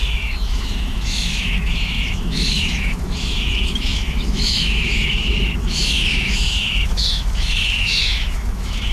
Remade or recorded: remade